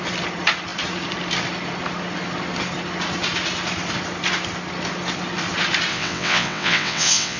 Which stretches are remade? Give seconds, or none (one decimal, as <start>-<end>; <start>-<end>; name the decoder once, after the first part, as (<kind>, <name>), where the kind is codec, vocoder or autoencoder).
5.9-7.4 (vocoder, WaveNeXt)